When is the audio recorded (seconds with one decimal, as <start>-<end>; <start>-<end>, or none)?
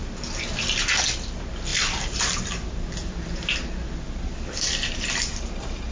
0.0-1.7; 5.2-5.9